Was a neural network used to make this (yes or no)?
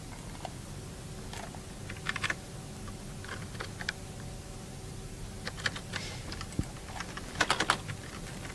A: no